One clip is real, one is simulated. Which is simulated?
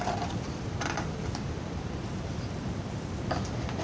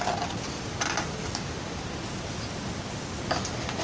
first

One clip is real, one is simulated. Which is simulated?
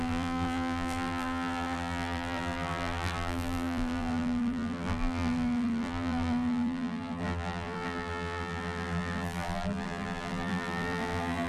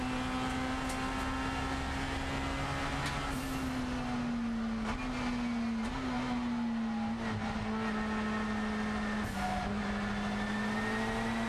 first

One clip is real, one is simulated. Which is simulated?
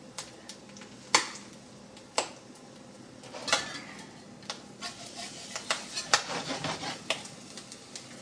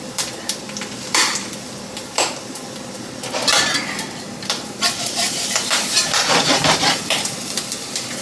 second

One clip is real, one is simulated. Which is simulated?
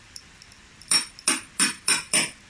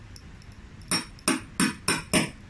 first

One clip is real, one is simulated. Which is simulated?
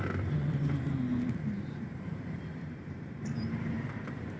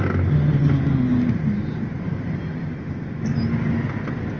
first